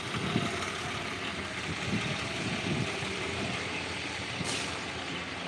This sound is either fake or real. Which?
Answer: real